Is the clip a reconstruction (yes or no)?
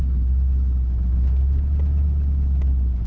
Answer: no